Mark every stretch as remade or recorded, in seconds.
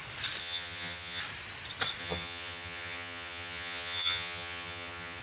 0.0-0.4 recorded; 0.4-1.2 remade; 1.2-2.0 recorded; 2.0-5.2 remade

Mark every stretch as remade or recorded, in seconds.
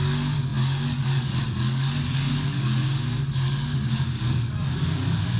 0.0-2.8 remade; 2.8-3.3 recorded; 3.3-5.4 remade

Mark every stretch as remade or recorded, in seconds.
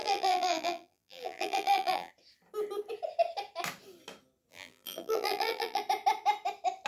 0.0-2.1 remade; 2.1-4.5 recorded; 4.5-5.8 remade; 5.8-6.9 recorded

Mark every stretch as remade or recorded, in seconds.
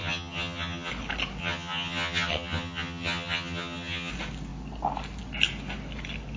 0.0-0.9 remade; 0.9-1.4 recorded; 1.4-4.1 remade; 4.1-6.4 recorded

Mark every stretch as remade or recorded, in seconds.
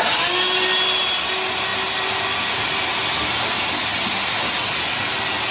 0.0-5.5 recorded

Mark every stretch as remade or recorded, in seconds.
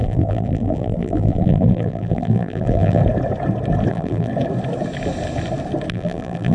0.0-3.0 remade; 3.0-3.9 recorded; 3.9-4.3 remade; 4.3-5.9 recorded; 5.9-6.5 remade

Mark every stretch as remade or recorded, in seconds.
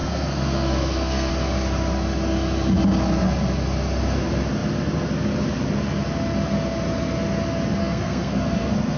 0.0-1.3 remade; 1.3-7.8 recorded; 7.8-9.0 remade